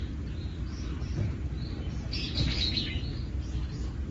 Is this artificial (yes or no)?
no